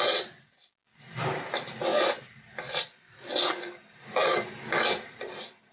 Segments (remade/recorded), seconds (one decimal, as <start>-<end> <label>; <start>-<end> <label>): 0.0-5.7 recorded